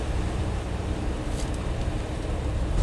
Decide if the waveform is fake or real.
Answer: fake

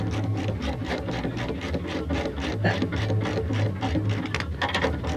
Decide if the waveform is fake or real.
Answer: real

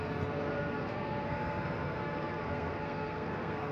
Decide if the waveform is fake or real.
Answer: fake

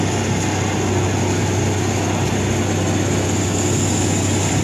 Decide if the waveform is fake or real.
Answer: real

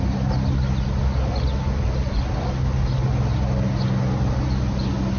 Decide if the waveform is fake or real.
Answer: real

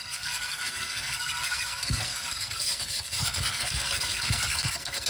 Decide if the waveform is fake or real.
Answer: fake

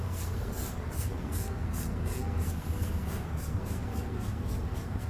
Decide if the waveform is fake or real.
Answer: fake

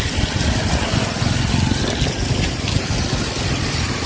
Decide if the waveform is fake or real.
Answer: real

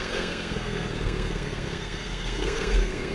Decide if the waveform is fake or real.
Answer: fake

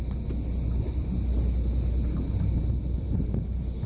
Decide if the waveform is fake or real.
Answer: real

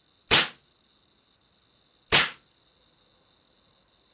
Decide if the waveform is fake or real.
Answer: real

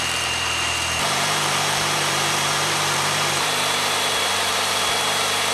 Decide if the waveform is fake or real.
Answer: fake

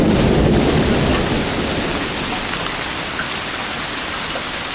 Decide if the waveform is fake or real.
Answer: real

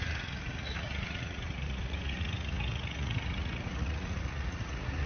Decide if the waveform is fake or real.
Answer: fake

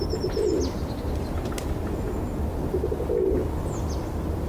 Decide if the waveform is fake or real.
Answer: real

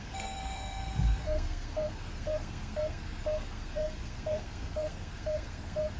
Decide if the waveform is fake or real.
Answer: fake